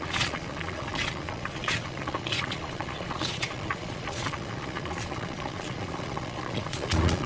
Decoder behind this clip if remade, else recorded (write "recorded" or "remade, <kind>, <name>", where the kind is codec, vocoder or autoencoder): remade, vocoder, Vocos